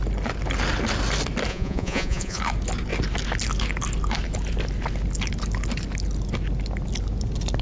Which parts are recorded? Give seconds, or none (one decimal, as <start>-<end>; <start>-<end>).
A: 0.0-1.5; 2.4-7.6